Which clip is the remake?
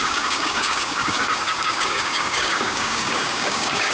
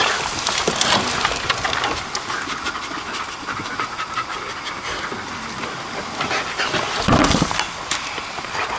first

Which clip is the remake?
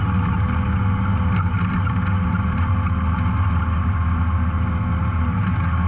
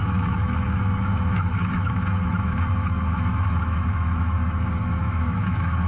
second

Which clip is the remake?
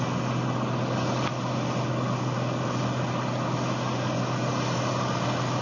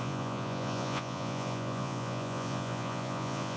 second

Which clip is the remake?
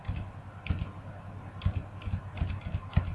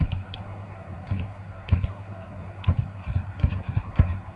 second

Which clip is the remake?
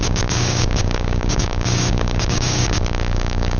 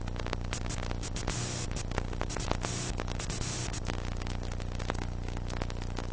first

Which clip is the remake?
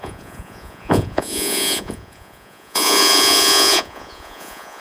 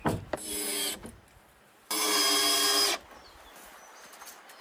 first